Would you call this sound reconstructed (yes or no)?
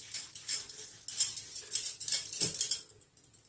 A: no